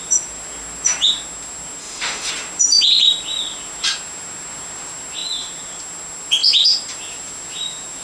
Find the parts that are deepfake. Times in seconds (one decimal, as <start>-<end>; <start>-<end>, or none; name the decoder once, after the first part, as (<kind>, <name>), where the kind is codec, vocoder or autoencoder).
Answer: 1.8-2.3 (autoencoder, DAC-VAE)